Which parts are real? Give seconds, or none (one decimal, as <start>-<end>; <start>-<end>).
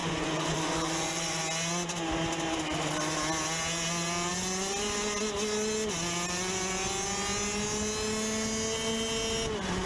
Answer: 1.4-9.9